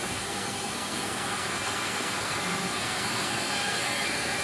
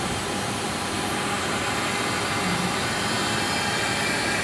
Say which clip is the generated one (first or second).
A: first